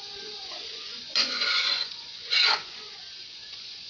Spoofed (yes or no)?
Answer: yes